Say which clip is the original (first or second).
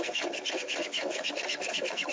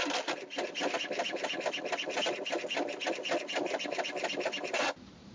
second